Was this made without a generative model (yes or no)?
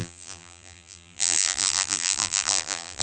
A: no